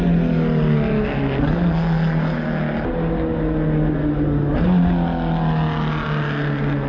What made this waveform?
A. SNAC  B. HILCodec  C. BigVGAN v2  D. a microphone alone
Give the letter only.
D